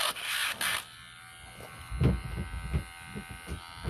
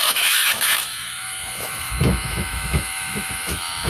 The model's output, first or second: second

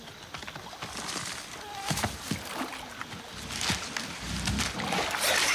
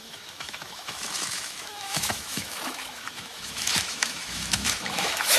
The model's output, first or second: second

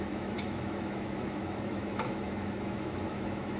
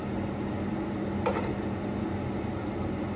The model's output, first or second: first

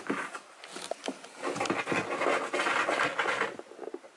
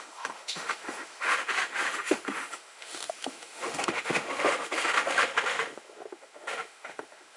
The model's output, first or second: second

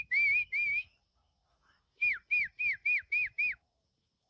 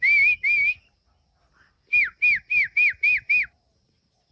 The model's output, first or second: first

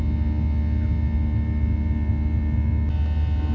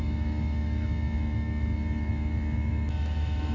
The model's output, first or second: second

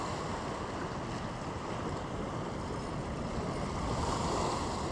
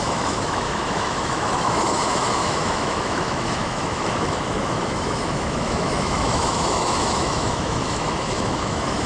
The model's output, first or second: second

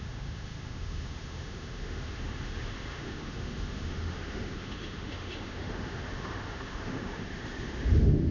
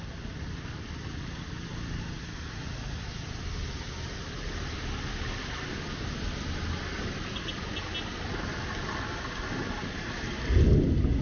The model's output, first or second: first